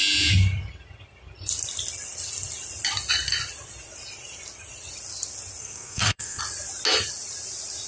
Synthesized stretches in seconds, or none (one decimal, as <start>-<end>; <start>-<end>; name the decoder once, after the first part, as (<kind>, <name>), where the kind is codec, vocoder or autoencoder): 5.6-6.4 (codec, SNAC)